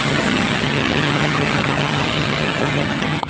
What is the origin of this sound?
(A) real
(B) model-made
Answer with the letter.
B